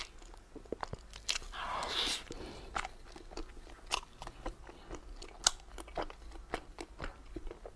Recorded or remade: recorded